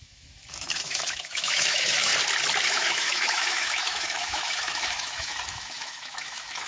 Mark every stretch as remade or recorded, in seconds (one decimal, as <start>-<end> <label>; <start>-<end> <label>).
0.0-2.1 remade; 2.1-2.7 recorded; 2.7-6.7 remade